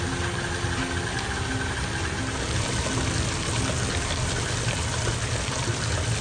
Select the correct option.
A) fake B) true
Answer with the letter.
B